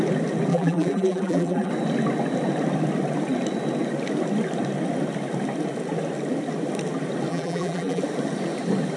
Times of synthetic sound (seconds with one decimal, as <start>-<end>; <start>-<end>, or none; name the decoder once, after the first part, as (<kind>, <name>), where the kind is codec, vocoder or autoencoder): 0.5-1.7 (vocoder, BigVGAN v2); 7.3-8.0